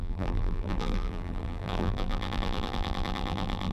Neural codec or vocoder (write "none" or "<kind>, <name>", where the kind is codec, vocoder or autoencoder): vocoder, BigVGAN v2